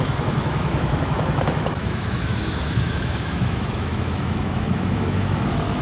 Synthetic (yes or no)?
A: yes